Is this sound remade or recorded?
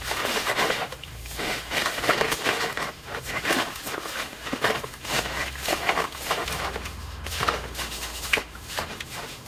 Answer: remade